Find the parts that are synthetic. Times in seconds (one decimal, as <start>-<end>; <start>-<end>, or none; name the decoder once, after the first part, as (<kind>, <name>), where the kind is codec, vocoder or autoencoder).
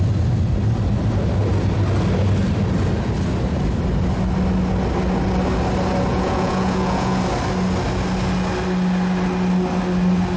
6.1-7.2 (vocoder, Vocos)